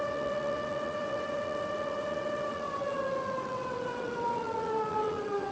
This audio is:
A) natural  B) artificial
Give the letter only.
B